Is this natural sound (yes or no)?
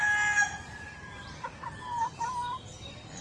yes